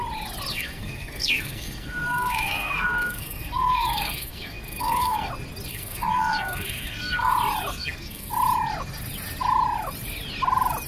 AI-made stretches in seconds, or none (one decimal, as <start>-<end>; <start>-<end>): 0.5-5.3; 5.7-7.3; 7.7-8.3